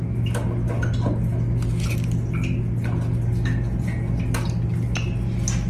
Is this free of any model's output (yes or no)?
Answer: yes